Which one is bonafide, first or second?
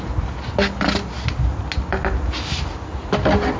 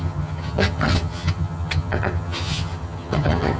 first